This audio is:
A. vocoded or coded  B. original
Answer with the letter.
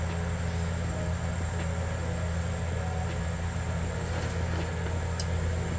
B